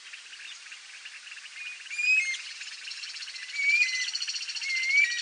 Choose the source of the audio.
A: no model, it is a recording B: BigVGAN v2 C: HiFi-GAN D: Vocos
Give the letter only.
A